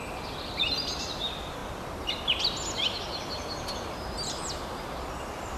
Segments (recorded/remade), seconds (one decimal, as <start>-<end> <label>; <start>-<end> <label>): 0.0-5.6 recorded